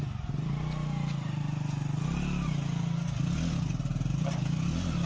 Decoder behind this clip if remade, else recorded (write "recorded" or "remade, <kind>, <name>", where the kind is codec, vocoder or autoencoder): recorded